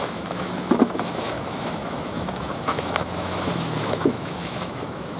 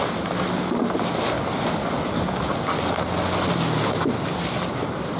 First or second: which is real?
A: second